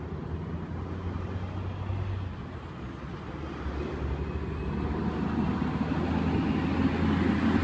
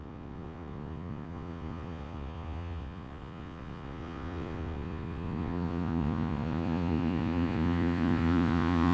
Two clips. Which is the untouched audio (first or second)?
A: first